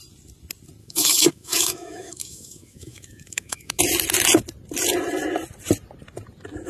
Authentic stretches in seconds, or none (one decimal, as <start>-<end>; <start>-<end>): 0.0-0.8; 3.8-6.7